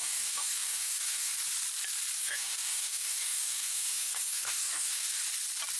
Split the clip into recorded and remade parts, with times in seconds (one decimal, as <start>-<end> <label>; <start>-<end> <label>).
0.0-1.3 remade; 1.3-2.2 recorded; 2.2-5.2 remade; 5.2-5.8 recorded